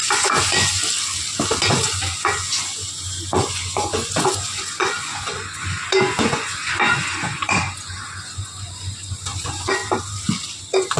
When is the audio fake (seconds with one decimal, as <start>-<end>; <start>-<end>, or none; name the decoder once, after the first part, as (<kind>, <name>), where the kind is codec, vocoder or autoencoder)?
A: 0.0-0.8 (vocoder, Vocos); 1.7-9.8; 10.6-11.0